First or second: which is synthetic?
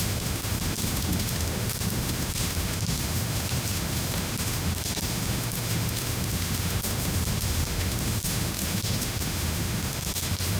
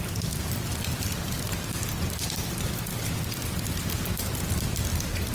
first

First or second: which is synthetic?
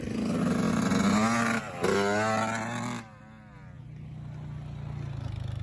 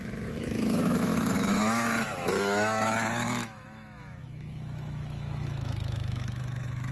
second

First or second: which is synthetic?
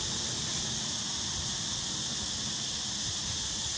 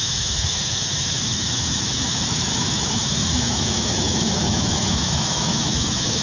second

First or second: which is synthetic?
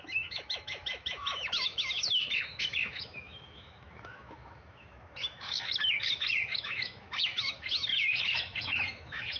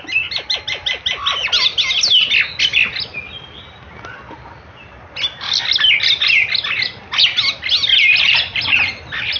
first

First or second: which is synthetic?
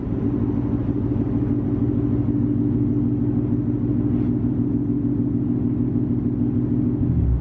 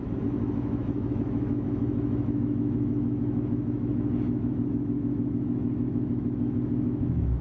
second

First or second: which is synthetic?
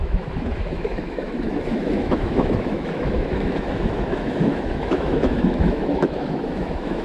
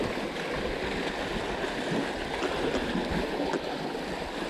first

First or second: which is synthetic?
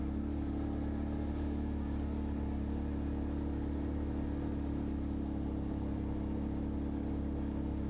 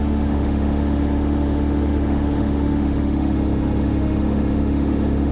second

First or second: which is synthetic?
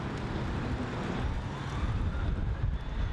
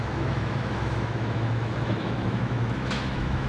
second